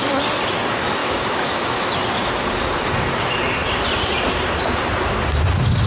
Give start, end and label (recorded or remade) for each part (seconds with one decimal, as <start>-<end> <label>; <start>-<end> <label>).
0.0-1.0 recorded; 1.0-1.9 remade; 1.9-5.9 recorded